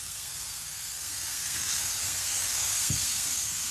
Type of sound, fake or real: fake